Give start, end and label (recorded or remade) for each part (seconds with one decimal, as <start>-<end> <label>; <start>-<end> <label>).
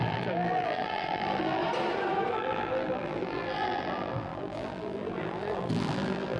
0.0-1.6 remade; 1.6-2.3 recorded; 2.3-6.4 remade